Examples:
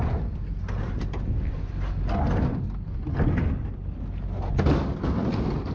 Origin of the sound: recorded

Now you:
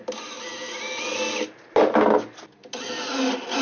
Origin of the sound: recorded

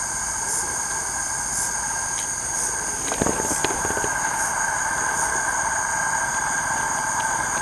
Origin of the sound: recorded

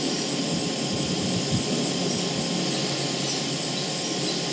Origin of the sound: recorded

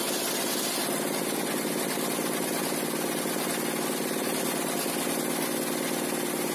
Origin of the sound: recorded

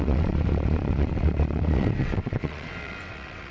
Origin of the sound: remade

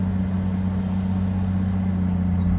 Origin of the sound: recorded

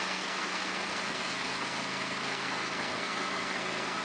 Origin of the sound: remade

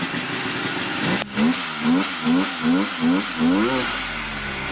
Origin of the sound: recorded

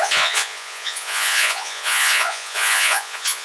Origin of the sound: remade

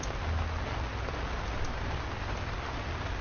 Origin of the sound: recorded